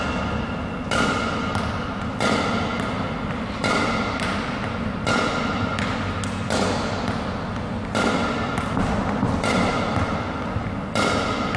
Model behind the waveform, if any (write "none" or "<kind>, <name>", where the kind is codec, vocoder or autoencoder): none